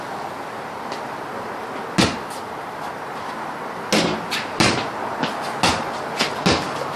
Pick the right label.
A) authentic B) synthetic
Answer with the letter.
A